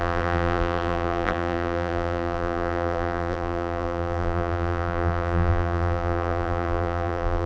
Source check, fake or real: fake